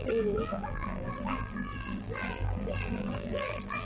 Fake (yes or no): yes